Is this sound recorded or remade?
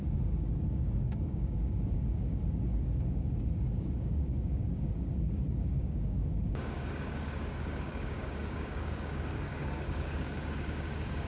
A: remade